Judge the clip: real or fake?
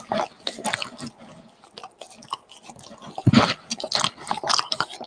real